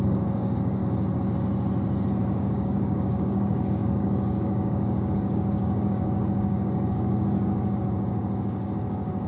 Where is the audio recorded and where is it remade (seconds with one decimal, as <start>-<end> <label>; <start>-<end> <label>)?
0.0-0.8 remade; 0.8-2.2 recorded; 2.2-9.3 remade